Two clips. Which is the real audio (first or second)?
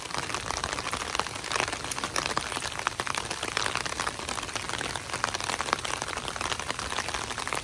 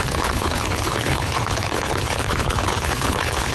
first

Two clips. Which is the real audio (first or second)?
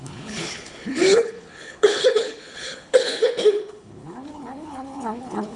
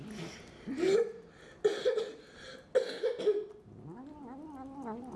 second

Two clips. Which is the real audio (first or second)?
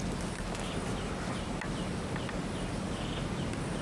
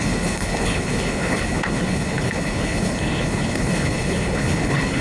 first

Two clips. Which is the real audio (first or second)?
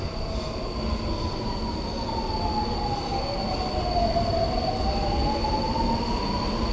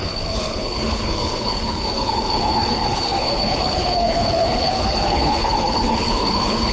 first